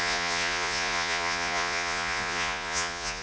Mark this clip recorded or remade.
remade